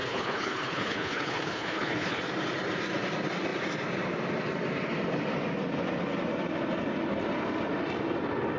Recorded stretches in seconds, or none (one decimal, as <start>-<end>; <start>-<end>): 2.2-8.6